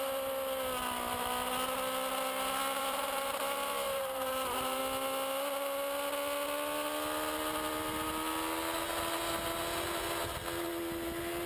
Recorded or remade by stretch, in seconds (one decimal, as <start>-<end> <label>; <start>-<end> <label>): 0.0-2.8 recorded; 2.8-4.8 remade; 4.8-11.5 recorded